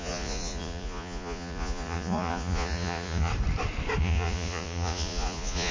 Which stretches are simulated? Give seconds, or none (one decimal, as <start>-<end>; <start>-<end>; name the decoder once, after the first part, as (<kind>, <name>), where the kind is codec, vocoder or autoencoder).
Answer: 0.0-3.3 (vocoder, Vocos); 4.0-5.7